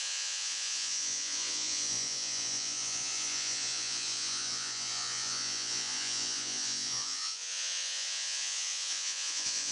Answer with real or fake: fake